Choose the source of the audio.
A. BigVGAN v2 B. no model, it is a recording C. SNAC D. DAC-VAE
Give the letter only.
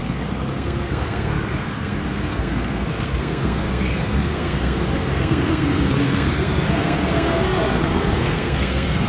C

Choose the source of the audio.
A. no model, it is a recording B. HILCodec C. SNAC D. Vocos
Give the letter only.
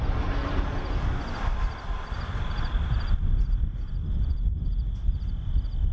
A